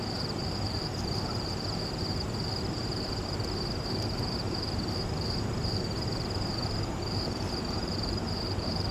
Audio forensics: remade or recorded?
remade